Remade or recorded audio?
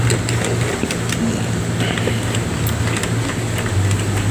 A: recorded